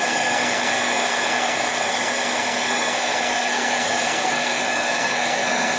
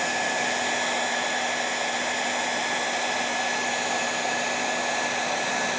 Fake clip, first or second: first